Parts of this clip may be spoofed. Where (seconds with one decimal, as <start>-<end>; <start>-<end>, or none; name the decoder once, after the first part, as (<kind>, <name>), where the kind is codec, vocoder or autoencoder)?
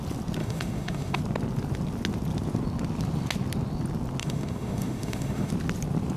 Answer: 0.4-1.2 (autoencoder, DAC-VAE); 4.2-5.5